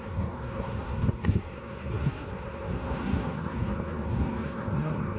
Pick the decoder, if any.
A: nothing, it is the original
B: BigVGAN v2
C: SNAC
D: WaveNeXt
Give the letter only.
C